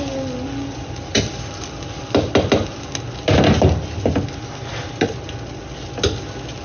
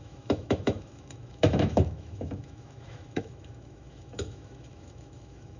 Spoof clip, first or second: second